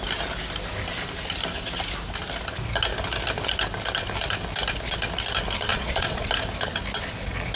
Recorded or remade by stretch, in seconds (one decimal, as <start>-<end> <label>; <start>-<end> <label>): 0.0-5.7 recorded; 5.7-6.3 remade; 6.3-7.6 recorded